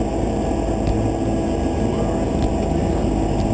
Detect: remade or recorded recorded